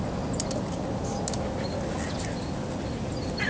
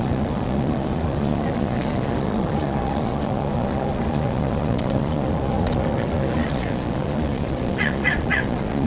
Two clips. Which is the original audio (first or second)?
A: first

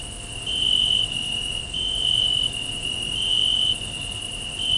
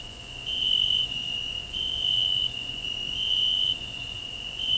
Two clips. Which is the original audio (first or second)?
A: first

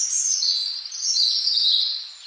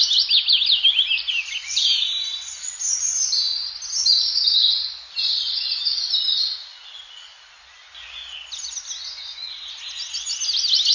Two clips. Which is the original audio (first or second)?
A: second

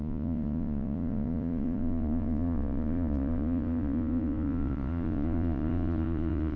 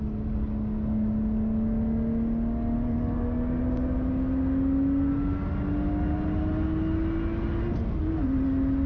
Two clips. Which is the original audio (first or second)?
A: second